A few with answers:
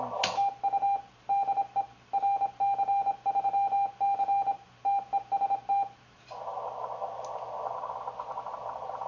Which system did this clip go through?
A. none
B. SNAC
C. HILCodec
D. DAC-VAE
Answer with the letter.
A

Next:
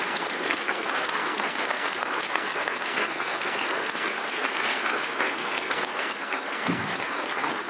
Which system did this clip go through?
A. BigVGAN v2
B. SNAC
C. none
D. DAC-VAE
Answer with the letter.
B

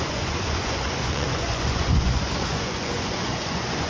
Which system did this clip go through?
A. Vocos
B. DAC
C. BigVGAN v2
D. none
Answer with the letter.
A